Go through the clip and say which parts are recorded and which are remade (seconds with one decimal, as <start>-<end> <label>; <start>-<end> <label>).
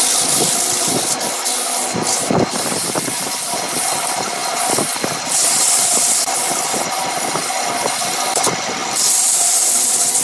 0.0-10.2 recorded